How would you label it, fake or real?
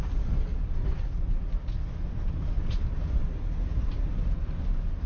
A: real